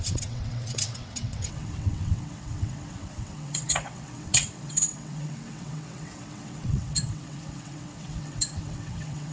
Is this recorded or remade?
remade